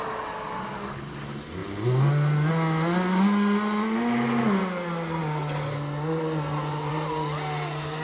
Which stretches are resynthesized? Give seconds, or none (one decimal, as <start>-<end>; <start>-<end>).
none